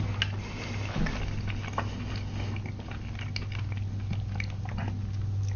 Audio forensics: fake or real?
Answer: real